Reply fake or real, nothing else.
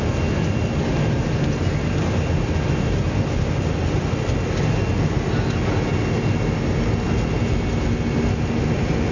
real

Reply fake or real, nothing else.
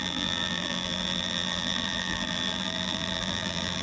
fake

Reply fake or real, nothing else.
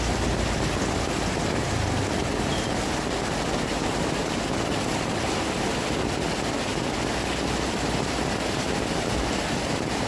real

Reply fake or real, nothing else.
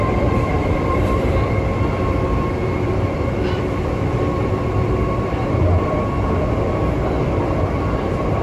fake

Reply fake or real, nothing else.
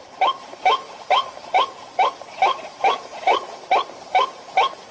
fake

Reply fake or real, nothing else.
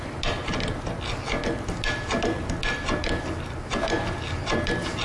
real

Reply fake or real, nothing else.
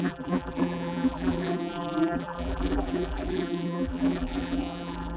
fake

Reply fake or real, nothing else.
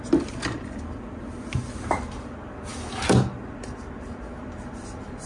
real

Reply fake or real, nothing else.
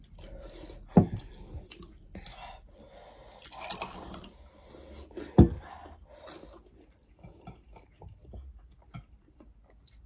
real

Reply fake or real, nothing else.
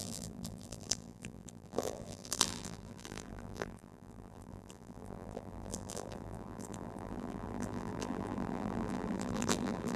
fake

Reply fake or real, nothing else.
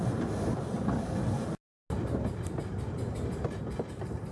real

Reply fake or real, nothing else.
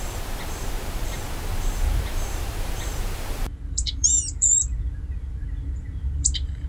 fake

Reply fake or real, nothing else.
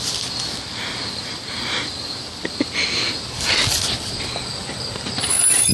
real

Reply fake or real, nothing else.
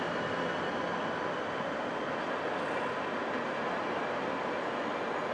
real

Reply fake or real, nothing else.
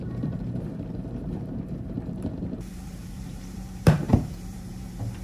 fake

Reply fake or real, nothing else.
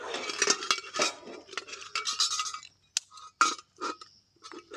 real